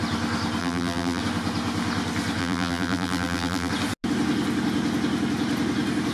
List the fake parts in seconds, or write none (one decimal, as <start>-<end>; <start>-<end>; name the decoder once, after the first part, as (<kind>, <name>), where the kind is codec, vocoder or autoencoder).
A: 0.6-1.2 (vocoder, BigVGAN v2); 2.4-3.7

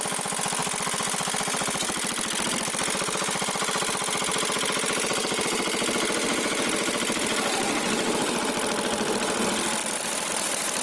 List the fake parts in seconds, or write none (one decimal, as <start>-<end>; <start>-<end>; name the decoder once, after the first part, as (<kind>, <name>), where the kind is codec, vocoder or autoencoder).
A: 0.6-3.9 (vocoder, BigVGAN v2); 9.8-10.3

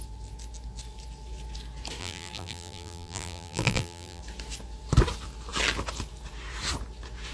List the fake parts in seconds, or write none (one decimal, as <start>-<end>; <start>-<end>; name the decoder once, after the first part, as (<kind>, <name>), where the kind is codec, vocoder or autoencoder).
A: 2.0-4.2 (vocoder, BigVGAN v2)

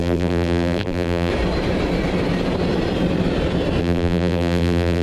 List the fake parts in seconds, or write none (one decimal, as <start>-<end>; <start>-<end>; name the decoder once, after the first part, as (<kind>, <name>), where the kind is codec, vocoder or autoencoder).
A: 0.0-1.3 (vocoder, BigVGAN v2); 3.8-5.0

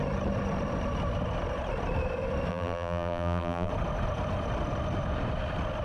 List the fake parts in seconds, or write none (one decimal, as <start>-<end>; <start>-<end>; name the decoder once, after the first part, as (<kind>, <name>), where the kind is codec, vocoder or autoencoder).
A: 2.5-3.7 (vocoder, BigVGAN v2)